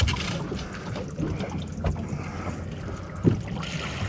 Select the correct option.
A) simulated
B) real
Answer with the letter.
B